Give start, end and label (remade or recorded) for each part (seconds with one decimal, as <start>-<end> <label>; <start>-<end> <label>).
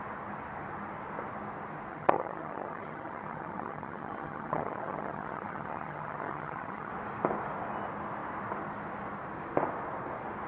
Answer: 0.0-1.9 recorded; 1.9-6.9 remade; 6.9-10.5 recorded